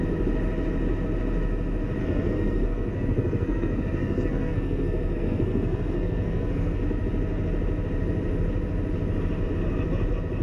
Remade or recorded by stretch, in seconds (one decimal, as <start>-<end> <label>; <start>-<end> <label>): 0.0-2.0 recorded; 2.0-6.8 remade; 6.8-10.4 recorded